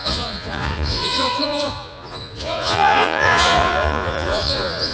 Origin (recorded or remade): remade